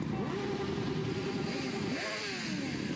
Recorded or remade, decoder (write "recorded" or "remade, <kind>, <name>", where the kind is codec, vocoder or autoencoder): recorded